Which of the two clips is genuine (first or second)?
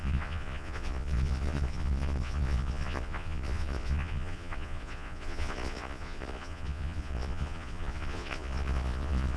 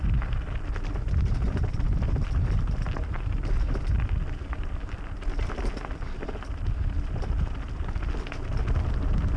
second